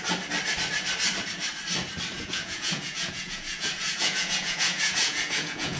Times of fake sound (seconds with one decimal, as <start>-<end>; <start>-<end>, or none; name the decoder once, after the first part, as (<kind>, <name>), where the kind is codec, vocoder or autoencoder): 2.1-5.8 (vocoder, Vocos)